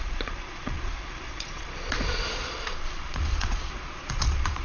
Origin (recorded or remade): remade